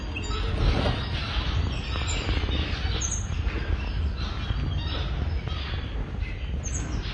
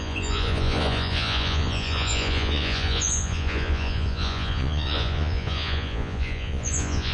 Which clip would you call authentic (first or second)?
first